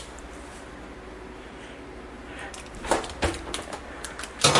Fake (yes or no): no